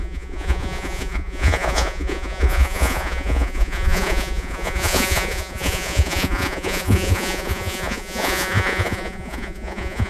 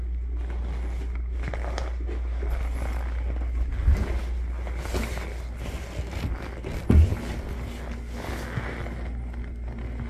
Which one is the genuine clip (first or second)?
second